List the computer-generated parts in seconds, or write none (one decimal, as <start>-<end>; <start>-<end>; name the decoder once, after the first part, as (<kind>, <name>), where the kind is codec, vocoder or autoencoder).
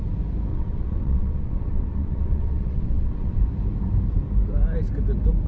0.5-3.4 (vocoder, WaveNeXt)